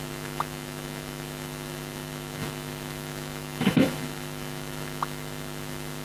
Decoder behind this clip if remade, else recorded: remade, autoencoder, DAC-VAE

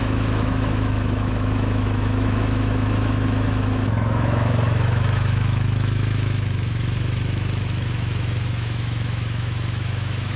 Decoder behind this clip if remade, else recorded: remade, autoencoder, DAC-VAE